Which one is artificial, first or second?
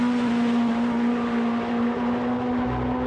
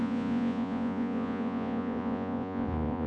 second